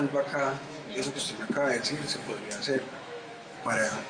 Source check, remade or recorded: remade